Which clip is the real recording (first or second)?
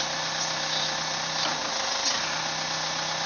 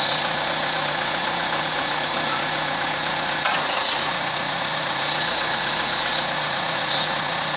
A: first